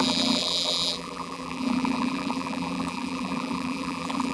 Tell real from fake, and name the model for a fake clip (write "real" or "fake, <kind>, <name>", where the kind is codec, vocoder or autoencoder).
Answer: fake, vocoder, BigVGAN v2